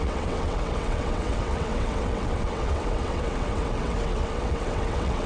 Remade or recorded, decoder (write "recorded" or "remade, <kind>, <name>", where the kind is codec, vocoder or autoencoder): remade, vocoder, WaveNeXt